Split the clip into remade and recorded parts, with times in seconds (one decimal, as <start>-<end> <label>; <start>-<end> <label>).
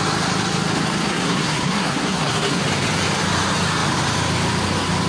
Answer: 0.0-1.1 recorded; 1.1-2.6 remade; 2.6-5.1 recorded